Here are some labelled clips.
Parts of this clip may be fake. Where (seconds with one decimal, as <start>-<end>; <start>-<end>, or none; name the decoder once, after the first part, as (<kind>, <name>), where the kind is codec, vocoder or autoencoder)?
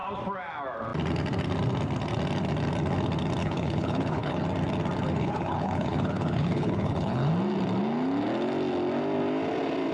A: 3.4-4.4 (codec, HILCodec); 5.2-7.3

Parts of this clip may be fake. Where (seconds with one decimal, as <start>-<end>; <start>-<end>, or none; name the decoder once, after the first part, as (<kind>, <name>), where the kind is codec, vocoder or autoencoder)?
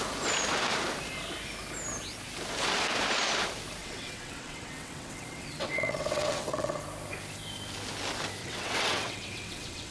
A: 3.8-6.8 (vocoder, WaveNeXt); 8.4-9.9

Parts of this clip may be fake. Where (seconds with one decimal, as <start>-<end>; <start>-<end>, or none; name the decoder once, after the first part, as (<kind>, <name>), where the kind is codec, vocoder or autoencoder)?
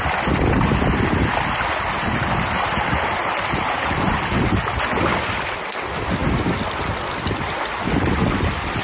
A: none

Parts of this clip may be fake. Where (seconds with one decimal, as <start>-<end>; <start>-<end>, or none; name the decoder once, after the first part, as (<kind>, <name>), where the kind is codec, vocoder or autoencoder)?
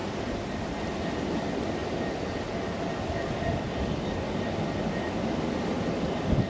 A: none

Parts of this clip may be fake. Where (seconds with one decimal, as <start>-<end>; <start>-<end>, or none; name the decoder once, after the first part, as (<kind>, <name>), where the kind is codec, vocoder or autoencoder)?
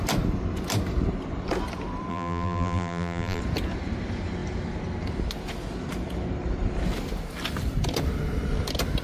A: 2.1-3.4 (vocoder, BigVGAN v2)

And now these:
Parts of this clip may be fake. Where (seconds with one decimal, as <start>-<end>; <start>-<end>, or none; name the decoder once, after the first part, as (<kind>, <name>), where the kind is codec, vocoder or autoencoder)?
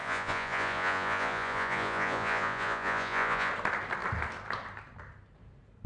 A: 0.0-3.5 (vocoder, Vocos)